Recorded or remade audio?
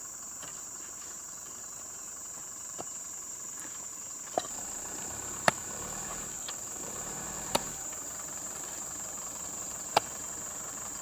remade